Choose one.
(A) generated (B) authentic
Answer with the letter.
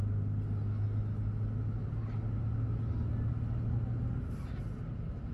B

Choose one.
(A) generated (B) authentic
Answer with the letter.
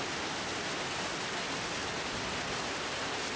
B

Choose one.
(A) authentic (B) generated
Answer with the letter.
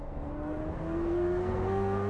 B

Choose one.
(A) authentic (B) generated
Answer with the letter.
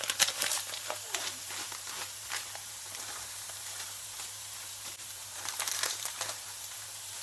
B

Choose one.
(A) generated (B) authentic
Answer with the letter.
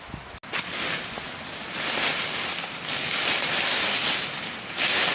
B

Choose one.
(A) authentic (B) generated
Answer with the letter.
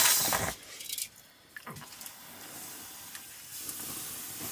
A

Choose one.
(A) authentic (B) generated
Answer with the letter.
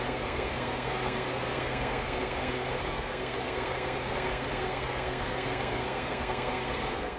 B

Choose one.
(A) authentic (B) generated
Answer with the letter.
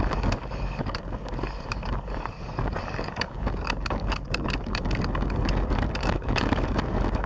B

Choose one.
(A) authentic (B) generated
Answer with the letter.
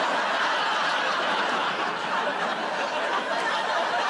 A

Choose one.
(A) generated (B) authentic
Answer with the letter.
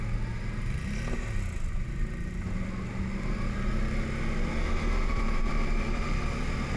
B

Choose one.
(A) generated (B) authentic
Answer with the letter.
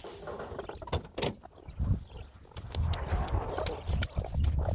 B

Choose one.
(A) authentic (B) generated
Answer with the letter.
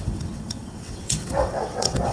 B